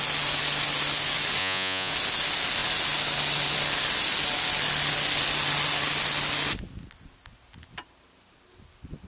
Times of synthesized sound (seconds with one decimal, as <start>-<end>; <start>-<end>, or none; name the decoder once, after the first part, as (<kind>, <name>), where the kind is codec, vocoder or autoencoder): 1.4-1.9 (vocoder, Vocos)